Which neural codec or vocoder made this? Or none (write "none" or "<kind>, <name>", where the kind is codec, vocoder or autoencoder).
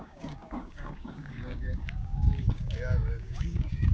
codec, DAC